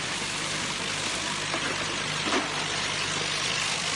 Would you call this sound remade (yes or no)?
no